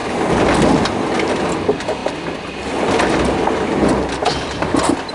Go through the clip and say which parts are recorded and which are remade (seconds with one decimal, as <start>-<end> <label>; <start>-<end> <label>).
0.0-5.1 recorded